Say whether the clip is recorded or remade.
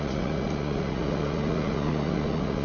remade